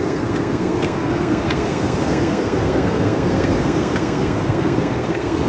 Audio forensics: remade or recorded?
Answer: remade